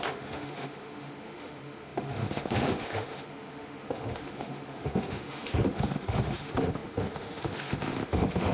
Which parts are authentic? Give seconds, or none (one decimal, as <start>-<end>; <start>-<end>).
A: none